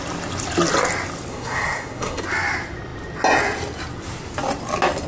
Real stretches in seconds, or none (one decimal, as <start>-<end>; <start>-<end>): 0.0-1.3; 2.2-5.1